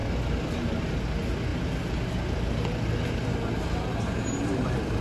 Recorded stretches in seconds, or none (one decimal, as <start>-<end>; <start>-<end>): 0.0-5.0